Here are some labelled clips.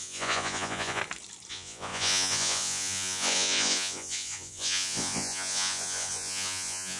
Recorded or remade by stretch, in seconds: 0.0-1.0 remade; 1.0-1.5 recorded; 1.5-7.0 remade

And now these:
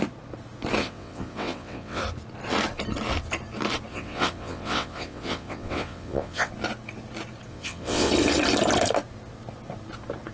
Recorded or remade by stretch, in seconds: 0.0-0.8 recorded; 0.8-2.0 remade; 2.0-3.9 recorded; 3.9-6.5 remade; 6.5-7.5 recorded; 7.5-8.1 remade; 8.1-10.3 recorded

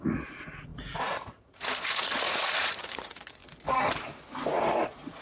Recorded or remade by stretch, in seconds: 0.0-3.4 remade; 3.4-4.6 recorded; 4.6-5.2 remade

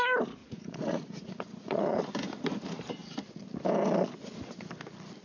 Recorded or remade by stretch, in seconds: 0.0-0.4 recorded; 0.4-2.0 remade; 2.0-5.2 recorded

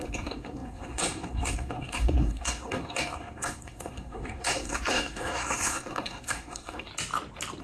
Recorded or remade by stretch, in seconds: 0.0-6.9 remade; 6.9-7.6 recorded

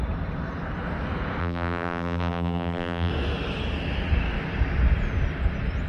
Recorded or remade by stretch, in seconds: 0.0-1.4 recorded; 1.4-3.1 remade; 3.1-5.9 recorded

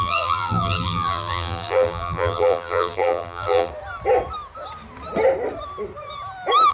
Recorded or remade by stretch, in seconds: 0.0-3.7 remade; 3.7-6.7 recorded

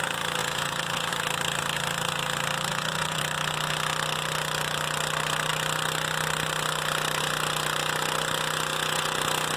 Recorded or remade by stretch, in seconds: 0.0-0.4 recorded; 0.4-1.1 remade; 1.1-2.7 recorded; 2.7-3.2 remade; 3.2-8.7 recorded; 8.7-9.2 remade; 9.2-9.6 recorded